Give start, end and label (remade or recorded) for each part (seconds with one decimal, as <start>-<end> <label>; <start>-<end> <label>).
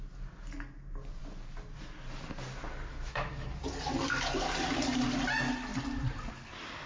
0.0-2.9 recorded; 2.9-3.6 remade; 3.6-6.9 recorded